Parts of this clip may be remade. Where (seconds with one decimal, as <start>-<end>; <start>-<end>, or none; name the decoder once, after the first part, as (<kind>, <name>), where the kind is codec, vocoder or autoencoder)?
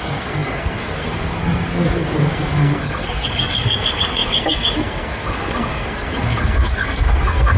0.0-7.6 (codec, SNAC)